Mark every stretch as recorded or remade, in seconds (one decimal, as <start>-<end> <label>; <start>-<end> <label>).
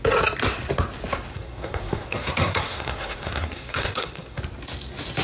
0.0-1.3 recorded; 1.3-4.4 remade; 4.4-5.2 recorded